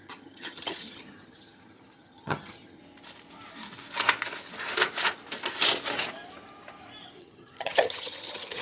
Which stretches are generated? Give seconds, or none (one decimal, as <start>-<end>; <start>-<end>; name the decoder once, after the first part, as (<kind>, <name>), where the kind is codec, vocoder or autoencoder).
0.0-2.8 (vocoder, HiFi-GAN); 7.2-8.6